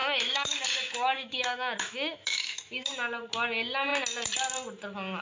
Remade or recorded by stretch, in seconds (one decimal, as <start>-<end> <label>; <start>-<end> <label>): 0.0-2.9 remade; 2.9-5.2 recorded